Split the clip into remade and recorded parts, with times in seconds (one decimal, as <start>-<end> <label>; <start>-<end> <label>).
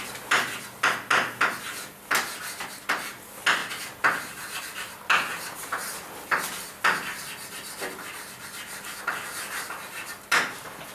0.0-10.9 recorded